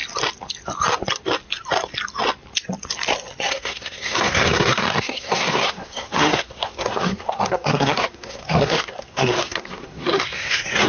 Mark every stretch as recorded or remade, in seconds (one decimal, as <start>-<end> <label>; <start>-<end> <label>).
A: 0.0-3.5 recorded; 3.5-10.9 remade